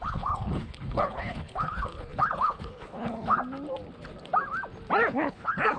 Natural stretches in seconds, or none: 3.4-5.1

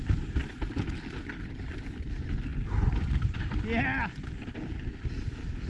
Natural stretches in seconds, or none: 0.0-5.7